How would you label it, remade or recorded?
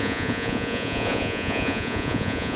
remade